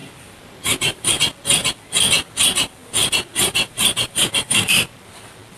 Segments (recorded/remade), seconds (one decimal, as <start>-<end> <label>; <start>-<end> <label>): 0.0-1.1 remade; 1.1-3.3 recorded; 3.3-5.1 remade; 5.1-5.6 recorded